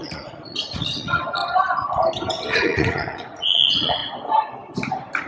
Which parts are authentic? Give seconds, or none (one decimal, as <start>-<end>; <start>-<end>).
1.4-2.5; 4.0-5.3